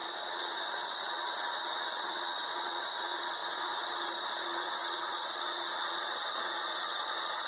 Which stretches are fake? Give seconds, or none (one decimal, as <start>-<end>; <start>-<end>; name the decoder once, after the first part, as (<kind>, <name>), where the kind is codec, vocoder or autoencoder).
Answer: 0.0-7.5 (vocoder, Vocos)